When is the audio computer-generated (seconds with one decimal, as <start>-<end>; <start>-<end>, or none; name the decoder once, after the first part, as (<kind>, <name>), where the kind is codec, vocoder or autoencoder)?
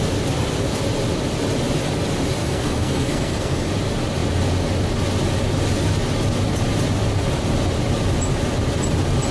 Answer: 2.4-3.7 (codec, SNAC)